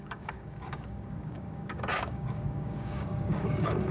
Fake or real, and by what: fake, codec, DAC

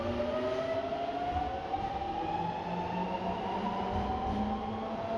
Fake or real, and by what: real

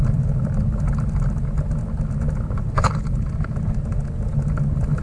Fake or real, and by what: real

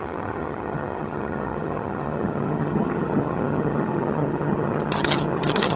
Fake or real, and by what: fake, vocoder, HiFi-GAN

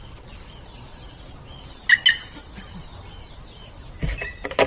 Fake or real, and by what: real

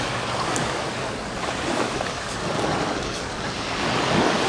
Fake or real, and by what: fake, codec, DAC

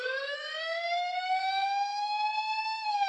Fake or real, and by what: fake, codec, SNAC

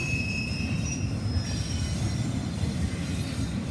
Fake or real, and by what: real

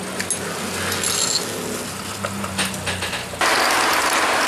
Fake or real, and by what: real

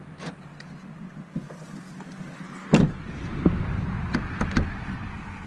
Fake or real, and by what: real